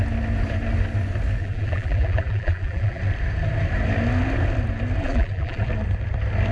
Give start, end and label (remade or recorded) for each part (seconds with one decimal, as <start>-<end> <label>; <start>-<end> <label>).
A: 0.0-1.4 recorded; 1.4-3.0 remade; 3.0-5.0 recorded; 5.0-5.7 remade; 5.7-6.5 recorded